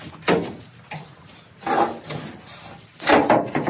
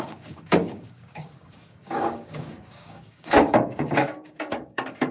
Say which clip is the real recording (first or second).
first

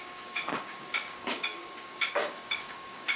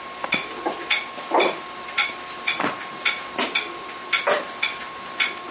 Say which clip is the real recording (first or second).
second